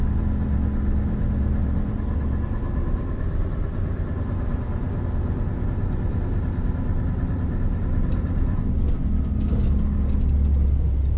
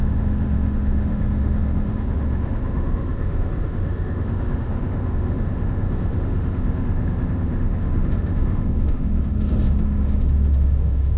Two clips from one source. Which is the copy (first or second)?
second